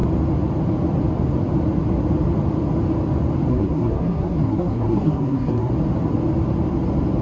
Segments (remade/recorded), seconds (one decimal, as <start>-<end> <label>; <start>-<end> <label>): 0.0-3.5 recorded; 3.5-5.7 remade; 5.7-7.2 recorded